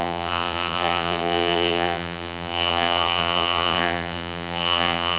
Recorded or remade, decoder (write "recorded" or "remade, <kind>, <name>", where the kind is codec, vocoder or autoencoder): remade, vocoder, BigVGAN v2